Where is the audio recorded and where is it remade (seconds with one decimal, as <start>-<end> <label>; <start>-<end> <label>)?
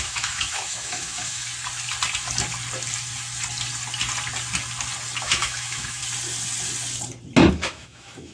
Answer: 0.0-1.5 remade; 1.5-5.2 recorded; 5.2-6.0 remade; 6.0-7.5 recorded; 7.5-8.3 remade